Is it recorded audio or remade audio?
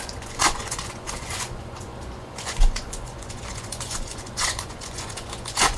remade